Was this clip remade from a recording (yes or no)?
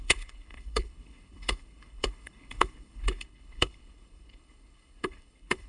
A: yes